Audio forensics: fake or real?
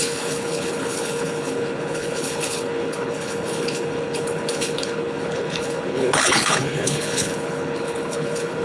fake